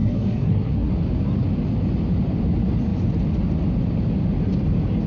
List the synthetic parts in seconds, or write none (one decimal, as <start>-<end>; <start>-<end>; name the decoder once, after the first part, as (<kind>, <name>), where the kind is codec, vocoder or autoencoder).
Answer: 0.0-0.9 (codec, SNAC)